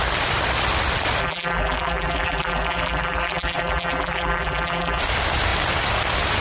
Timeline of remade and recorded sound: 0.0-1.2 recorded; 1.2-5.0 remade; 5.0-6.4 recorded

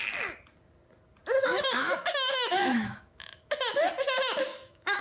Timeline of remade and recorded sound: 0.0-1.4 recorded; 1.4-3.4 remade; 3.4-4.5 recorded; 4.5-5.0 remade

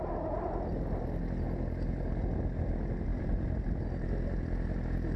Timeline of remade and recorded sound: 0.0-5.2 recorded